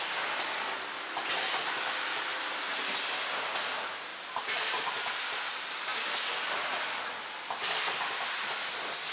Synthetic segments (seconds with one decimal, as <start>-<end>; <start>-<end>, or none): 4.1-5.3